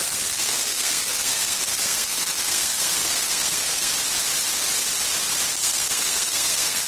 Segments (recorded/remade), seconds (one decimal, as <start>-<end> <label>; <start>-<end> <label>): 0.0-3.9 remade; 3.9-5.5 recorded; 5.5-6.9 remade

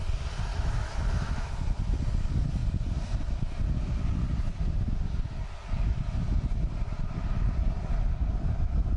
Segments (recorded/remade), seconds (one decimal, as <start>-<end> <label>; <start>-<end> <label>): 0.0-0.5 recorded; 0.5-1.5 remade; 1.5-9.0 recorded

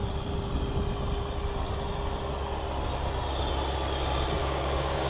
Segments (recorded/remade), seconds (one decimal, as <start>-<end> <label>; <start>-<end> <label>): 0.0-4.4 recorded; 4.4-5.1 remade

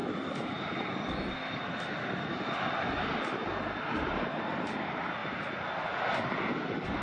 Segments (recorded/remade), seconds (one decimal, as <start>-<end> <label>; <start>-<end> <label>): 0.0-7.0 recorded

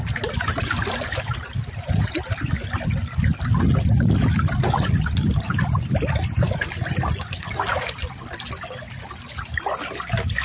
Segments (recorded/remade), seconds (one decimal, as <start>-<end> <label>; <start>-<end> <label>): 0.0-2.4 remade; 2.4-10.4 recorded

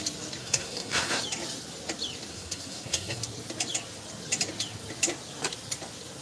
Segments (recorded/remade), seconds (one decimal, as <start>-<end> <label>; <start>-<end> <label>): 0.0-0.4 recorded; 0.4-1.2 remade; 1.2-2.3 recorded; 2.3-3.2 remade; 3.2-6.2 recorded

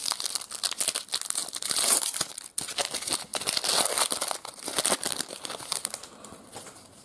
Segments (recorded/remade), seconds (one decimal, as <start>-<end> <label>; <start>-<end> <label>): 0.0-1.4 recorded; 1.4-2.6 remade; 2.6-3.3 recorded; 3.3-5.4 remade; 5.4-7.0 recorded